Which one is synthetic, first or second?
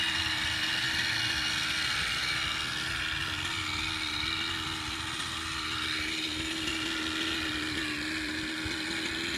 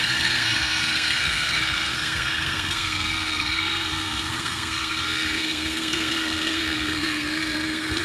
second